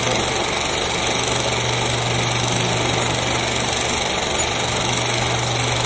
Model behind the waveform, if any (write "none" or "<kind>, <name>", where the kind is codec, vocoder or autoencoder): none